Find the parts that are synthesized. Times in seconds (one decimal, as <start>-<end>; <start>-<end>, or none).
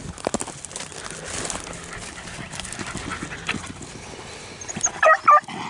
none